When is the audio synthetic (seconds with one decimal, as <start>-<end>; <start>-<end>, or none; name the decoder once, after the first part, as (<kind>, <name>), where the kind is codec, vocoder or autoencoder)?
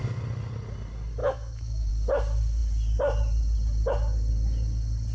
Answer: 1.2-1.9 (autoencoder, DAC-VAE)